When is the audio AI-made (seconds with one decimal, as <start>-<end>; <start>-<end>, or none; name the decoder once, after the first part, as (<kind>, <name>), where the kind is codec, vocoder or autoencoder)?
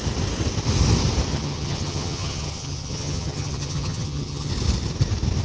1.3-4.5 (vocoder, HiFi-GAN)